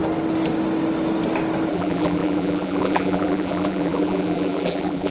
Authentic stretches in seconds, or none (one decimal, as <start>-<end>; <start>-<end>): 0.0-1.7